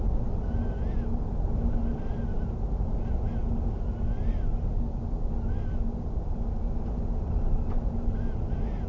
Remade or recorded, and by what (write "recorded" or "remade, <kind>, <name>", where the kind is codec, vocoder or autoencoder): recorded